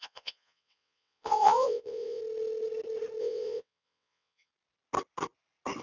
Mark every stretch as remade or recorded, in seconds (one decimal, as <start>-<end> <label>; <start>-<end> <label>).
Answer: 0.0-2.2 remade; 2.2-3.2 recorded; 3.2-4.5 remade; 4.5-5.8 recorded